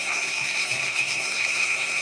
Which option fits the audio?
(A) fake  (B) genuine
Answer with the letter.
A